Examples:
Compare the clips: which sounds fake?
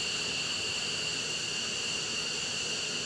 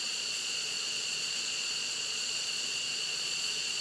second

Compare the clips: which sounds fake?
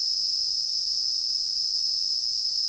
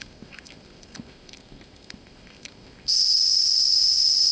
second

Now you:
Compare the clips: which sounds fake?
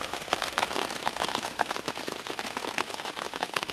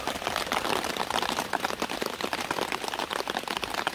first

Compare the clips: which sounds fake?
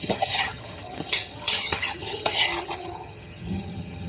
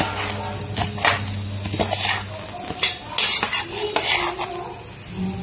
first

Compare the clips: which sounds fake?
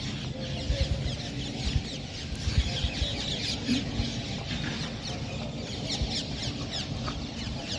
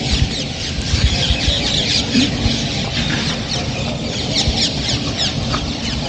second